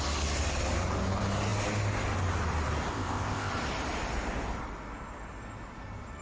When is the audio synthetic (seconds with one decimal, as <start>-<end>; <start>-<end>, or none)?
2.9-3.5